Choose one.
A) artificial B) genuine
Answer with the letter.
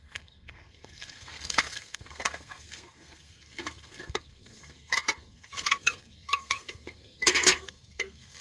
A